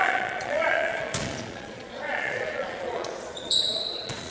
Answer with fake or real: fake